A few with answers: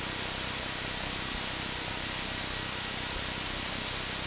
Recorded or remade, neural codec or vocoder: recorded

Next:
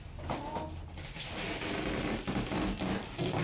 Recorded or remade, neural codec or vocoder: recorded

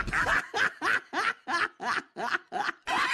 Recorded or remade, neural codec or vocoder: recorded